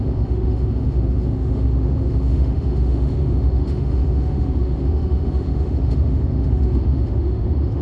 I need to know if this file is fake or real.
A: fake